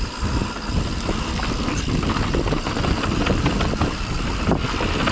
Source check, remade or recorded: recorded